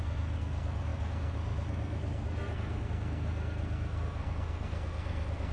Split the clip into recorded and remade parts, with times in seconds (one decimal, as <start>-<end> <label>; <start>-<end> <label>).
0.0-5.5 remade